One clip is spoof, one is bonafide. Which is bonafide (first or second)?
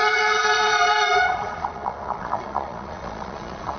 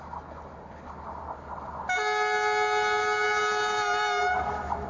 second